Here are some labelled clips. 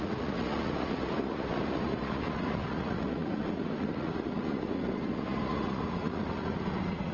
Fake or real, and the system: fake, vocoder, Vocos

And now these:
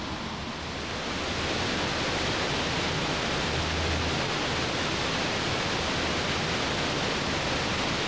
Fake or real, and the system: real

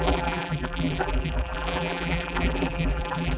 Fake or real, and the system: fake, vocoder, BigVGAN v2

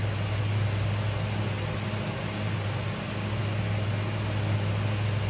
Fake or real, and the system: real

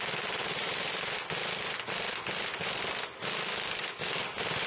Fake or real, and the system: real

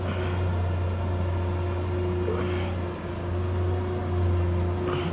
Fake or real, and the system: real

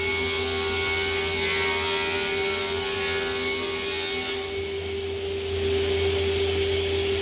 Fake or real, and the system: real